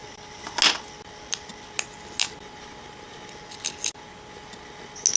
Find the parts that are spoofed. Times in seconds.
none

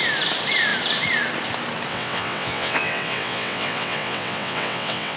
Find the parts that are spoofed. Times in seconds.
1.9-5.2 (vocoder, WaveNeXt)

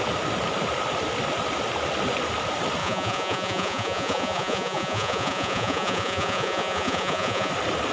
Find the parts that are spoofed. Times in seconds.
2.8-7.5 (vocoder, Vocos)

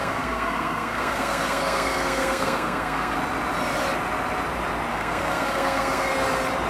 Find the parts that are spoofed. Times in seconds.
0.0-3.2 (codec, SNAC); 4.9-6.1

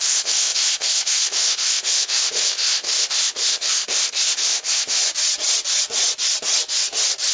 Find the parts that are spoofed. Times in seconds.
0.0-5.0 (codec, ZipCodec)